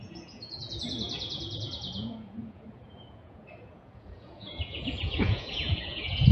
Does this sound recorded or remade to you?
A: remade